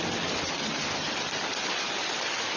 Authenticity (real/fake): real